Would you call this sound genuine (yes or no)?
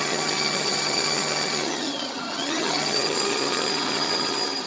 no